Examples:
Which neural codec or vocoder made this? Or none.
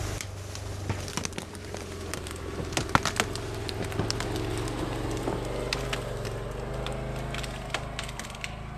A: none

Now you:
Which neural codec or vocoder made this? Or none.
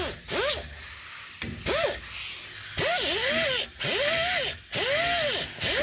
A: none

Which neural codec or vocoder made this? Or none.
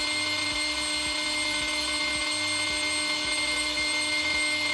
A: none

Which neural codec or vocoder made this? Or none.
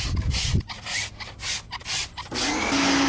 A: none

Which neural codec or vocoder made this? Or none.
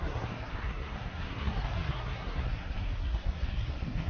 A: codec, SNAC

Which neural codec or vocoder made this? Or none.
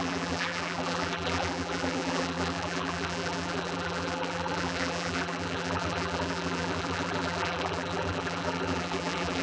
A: vocoder, BigVGAN v2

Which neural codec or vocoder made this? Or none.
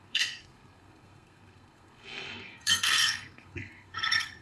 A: codec, SNAC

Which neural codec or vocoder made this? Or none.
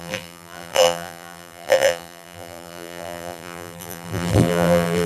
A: vocoder, BigVGAN v2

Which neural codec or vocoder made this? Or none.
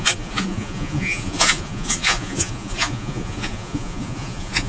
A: vocoder, Vocos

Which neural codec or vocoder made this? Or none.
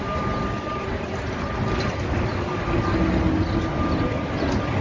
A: none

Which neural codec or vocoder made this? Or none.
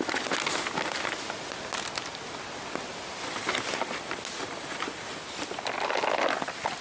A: none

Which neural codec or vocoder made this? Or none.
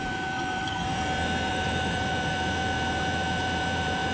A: vocoder, BigVGAN v2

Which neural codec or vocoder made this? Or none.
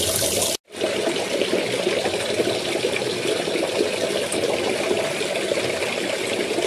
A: none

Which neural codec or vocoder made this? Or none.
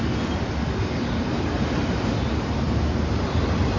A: none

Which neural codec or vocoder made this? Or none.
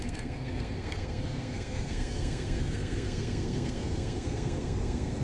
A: codec, SNAC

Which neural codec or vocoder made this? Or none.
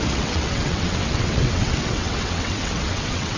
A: vocoder, WaveNeXt